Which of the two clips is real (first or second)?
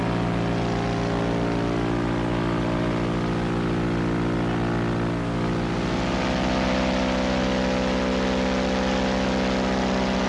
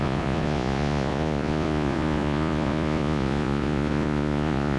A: first